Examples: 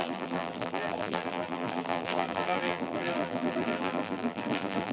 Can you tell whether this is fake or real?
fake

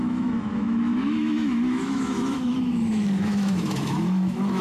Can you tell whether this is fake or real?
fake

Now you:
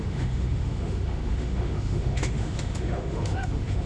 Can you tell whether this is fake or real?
fake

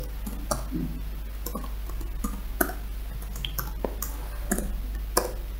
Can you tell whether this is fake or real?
real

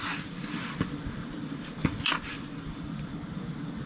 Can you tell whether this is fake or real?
real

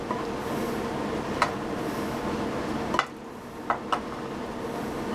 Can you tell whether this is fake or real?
real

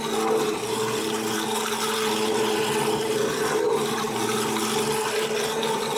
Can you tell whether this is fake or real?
real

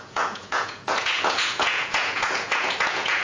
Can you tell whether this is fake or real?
fake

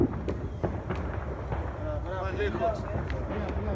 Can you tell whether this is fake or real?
real